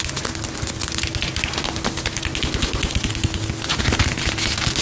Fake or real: real